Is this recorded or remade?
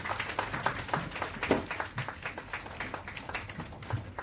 recorded